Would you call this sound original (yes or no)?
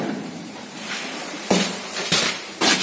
no